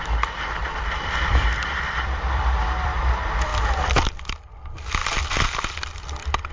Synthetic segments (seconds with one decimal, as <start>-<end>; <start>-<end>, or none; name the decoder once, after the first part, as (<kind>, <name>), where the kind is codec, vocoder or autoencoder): 0.6-3.0 (vocoder, BigVGAN v2); 3.5-4.1